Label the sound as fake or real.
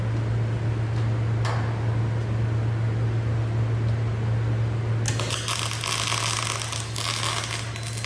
real